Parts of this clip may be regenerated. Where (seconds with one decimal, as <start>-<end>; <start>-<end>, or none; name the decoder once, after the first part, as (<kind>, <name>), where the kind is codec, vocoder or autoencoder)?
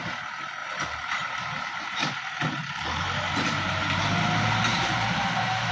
0.6-4.0 (vocoder, BigVGAN v2); 4.7-5.7